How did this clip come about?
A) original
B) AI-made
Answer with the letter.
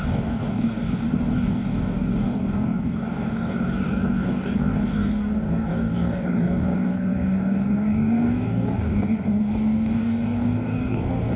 B